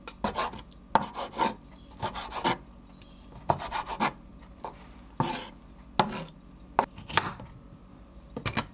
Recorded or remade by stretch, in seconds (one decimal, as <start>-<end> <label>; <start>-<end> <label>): 0.0-8.7 recorded